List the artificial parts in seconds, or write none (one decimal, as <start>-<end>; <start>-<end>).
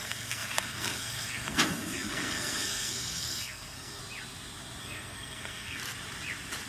0.0-4.0; 4.8-5.8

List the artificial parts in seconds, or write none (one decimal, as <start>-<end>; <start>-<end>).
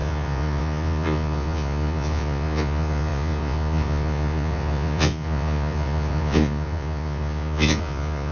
0.0-8.3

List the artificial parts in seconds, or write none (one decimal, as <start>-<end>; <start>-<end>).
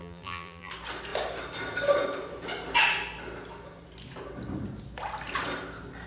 0.0-0.7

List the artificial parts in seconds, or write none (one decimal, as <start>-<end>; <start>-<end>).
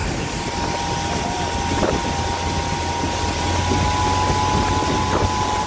none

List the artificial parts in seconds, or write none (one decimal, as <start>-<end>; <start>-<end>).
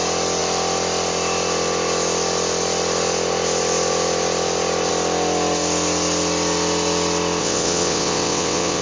7.4-8.8